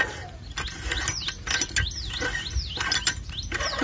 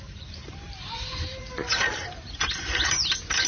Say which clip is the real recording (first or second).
first